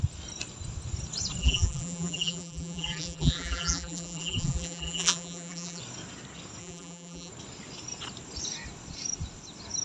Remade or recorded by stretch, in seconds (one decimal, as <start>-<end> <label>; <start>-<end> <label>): 0.0-1.4 recorded; 1.4-5.8 remade; 5.8-6.6 recorded; 6.6-7.3 remade; 7.3-9.8 recorded